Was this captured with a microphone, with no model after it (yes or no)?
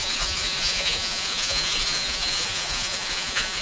no